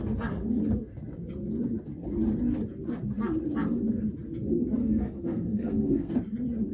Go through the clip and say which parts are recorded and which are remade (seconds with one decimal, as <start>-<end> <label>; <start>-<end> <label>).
0.0-4.8 recorded; 4.8-6.1 remade; 6.1-6.7 recorded